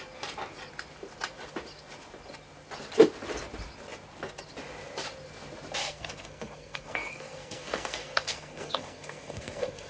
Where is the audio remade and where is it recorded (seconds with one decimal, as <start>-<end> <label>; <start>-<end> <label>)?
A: 0.0-5.8 recorded; 5.8-9.9 remade